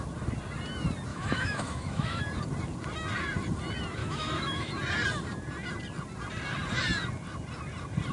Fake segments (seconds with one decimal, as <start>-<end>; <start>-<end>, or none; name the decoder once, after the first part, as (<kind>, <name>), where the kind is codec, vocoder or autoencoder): 1.1-2.2 (autoencoder, DAC-VAE); 4.0-4.7